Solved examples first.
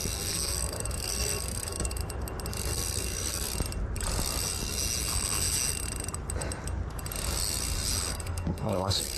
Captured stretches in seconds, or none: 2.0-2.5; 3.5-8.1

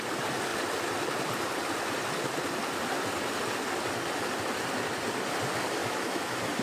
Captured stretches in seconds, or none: 0.0-5.8

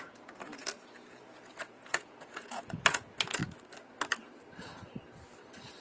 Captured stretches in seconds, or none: 3.4-5.8

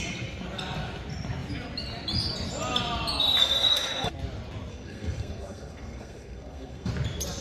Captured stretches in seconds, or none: 0.0-3.4; 4.1-4.7; 6.9-7.4